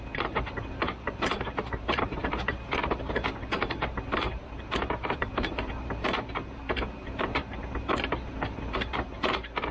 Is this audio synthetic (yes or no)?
yes